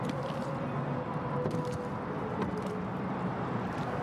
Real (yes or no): yes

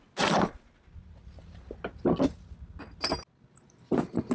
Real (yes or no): yes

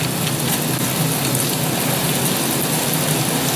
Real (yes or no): yes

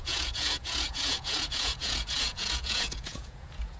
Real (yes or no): no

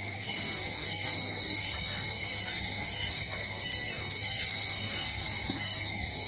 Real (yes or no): no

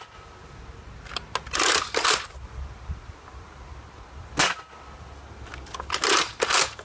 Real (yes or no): yes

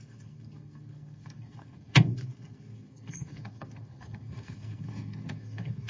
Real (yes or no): no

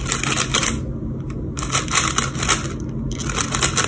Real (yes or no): yes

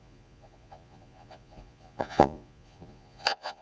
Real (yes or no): no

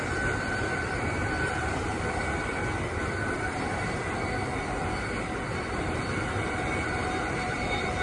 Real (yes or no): no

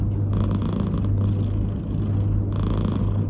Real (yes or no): yes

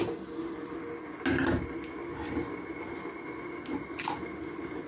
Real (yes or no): yes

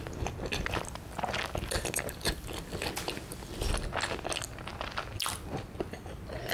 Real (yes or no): yes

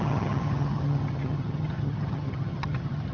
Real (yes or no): no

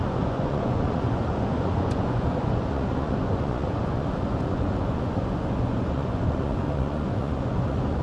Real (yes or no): no